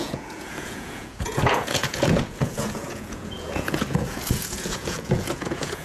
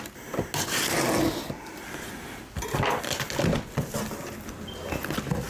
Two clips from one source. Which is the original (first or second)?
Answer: second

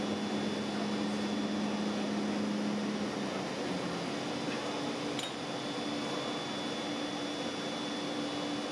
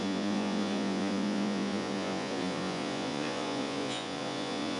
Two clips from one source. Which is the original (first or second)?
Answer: first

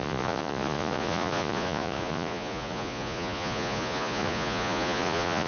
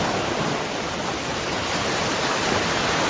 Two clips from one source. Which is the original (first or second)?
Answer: second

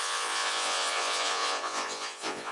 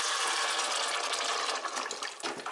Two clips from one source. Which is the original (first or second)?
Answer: second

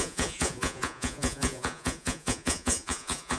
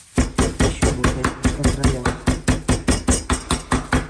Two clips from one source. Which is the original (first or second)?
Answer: second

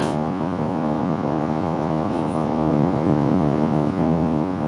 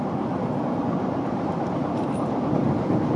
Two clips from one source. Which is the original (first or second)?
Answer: second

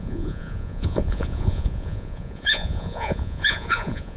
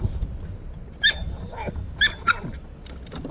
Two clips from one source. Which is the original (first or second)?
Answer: second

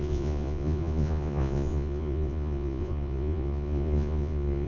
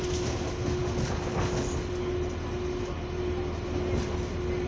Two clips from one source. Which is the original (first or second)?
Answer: second